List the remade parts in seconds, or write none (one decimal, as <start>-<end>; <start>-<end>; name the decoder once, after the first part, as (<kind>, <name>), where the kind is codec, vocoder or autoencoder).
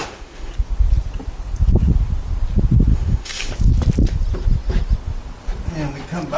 0.0-0.5 (autoencoder, DAC-VAE); 2.9-3.5